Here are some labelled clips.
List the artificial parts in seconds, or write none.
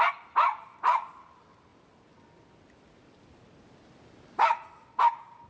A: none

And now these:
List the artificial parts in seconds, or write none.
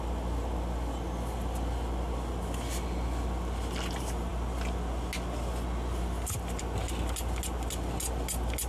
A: none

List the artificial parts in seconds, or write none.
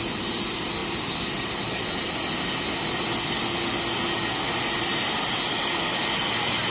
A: none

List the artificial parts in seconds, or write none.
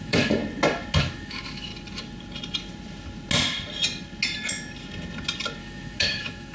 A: 0.0-0.4 (autoencoder, DAC-VAE); 1.0-1.7; 5.6-6.5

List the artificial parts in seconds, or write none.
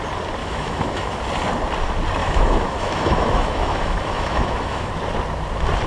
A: 0.4-1.2 (autoencoder, DAC-VAE); 2.2-4.9